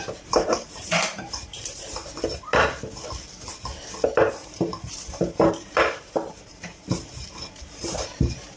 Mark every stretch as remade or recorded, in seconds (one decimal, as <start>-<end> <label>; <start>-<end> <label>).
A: 0.0-2.0 remade; 2.0-4.3 recorded; 4.3-8.6 remade